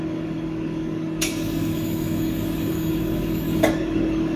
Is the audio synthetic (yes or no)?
yes